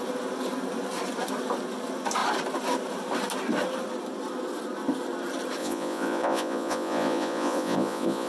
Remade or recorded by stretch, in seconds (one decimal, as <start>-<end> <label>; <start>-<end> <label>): 0.0-5.6 recorded; 5.6-8.3 remade